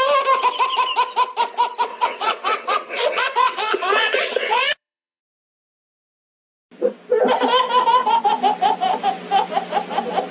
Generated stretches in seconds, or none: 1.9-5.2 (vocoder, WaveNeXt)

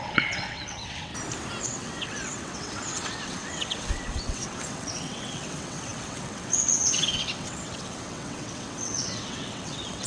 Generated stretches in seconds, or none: 0.0-1.1 (vocoder, WaveNeXt); 1.6-10.1

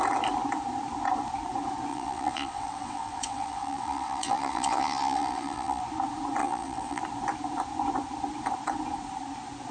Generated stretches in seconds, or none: 1.9-5.8 (vocoder, WaveNeXt); 6.4-7.0

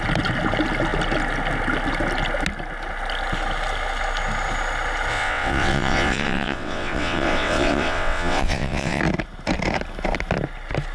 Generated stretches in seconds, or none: 5.1-9.0 (vocoder, WaveNeXt)

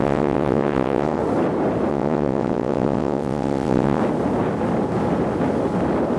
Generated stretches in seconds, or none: 0.0-1.2 (vocoder, WaveNeXt); 1.9-4.0

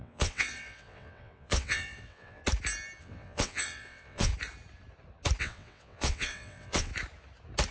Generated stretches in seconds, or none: 0.0-2.4 (vocoder, WaveNeXt); 3.0-4.3; 5.4-6.9

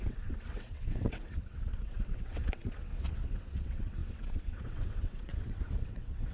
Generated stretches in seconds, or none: 0.0-6.3 (vocoder, WaveNeXt)